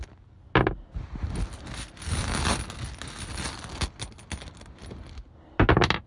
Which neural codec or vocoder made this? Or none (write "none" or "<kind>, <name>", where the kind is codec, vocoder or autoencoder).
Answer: none